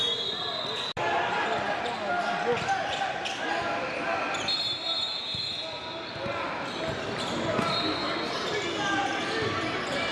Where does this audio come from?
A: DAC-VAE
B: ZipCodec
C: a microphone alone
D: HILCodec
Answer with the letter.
C